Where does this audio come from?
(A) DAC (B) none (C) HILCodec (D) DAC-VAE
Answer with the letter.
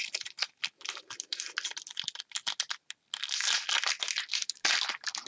B